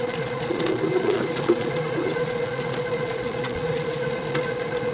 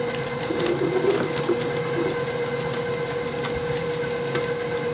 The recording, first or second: second